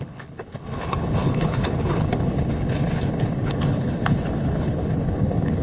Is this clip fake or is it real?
fake